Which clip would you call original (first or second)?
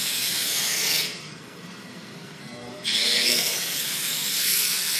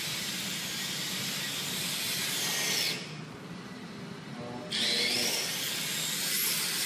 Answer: second